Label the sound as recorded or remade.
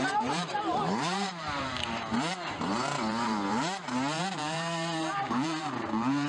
remade